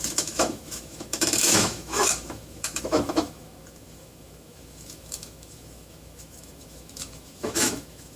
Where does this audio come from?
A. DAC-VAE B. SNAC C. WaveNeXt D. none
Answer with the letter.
A